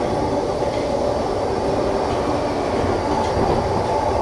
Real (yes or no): yes